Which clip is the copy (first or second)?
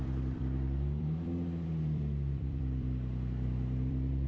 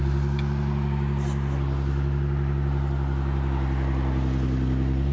first